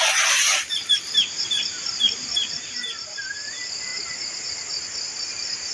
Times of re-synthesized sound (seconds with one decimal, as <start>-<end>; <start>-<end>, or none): 0.0-3.9; 5.3-5.7